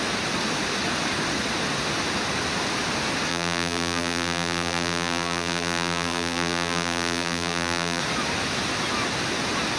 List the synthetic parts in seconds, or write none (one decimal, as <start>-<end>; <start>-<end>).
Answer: 3.3-8.0